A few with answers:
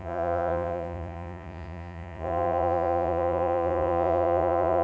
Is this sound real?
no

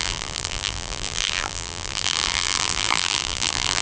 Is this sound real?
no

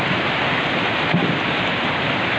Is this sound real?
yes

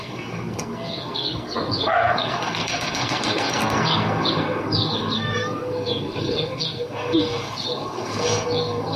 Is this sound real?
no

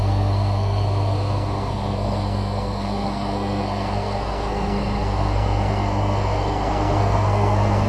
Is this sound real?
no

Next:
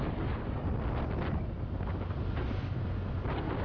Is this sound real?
yes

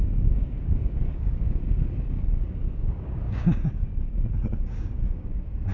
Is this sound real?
no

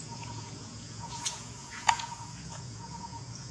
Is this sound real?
no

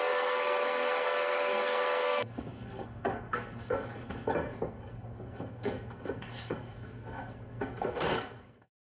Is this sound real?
no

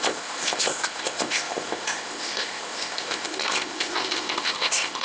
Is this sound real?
no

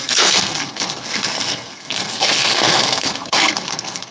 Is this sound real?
no